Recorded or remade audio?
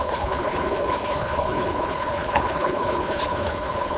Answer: remade